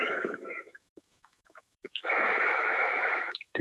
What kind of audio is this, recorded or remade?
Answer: remade